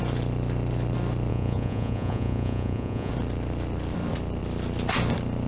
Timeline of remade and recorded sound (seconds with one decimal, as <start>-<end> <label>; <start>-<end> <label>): 0.0-1.3 recorded; 1.3-3.1 remade; 3.1-5.5 recorded